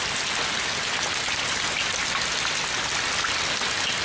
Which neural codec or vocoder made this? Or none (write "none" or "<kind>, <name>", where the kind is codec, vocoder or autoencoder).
none